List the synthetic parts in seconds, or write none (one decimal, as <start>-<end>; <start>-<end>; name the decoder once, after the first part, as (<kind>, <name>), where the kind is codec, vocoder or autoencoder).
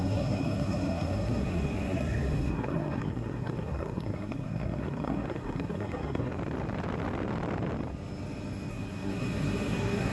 0.0-6.3 (codec, SNAC); 8.7-10.1